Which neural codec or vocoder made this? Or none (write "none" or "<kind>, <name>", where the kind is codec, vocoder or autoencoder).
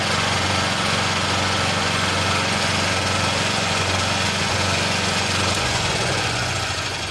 vocoder, Vocos